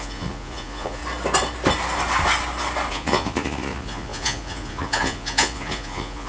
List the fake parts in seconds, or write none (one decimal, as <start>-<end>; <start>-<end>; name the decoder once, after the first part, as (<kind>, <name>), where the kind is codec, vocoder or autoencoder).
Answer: 0.0-1.0 (vocoder, Vocos); 2.9-6.3